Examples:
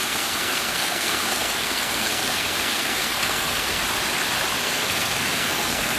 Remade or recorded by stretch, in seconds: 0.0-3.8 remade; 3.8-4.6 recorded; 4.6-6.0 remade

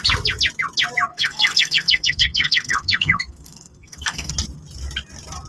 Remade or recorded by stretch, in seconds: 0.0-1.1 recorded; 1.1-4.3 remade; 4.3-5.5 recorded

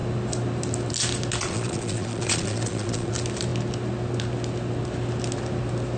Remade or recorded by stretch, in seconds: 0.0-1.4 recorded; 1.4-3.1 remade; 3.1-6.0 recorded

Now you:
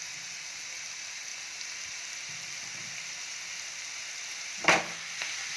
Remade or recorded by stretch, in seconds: 0.0-5.6 recorded

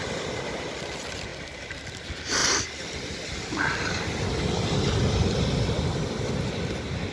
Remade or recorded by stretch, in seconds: 0.0-7.1 recorded